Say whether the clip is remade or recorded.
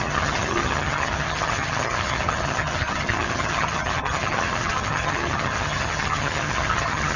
remade